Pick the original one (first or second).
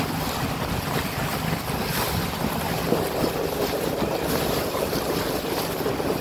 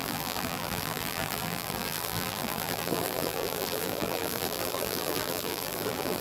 first